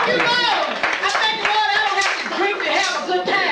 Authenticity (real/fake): fake